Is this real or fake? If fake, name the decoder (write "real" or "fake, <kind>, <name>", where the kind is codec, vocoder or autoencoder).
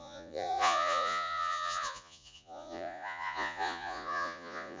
fake, vocoder, Vocos